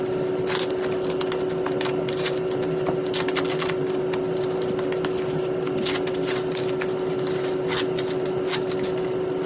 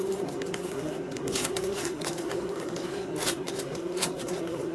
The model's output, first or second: second